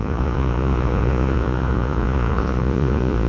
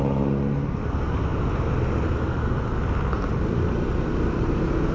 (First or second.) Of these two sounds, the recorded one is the second